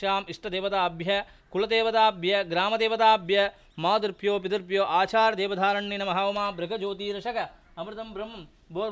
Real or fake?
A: real